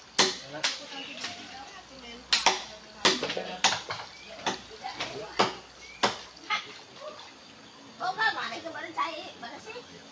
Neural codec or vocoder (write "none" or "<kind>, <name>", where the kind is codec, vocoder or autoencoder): none